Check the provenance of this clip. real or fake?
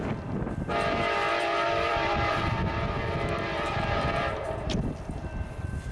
fake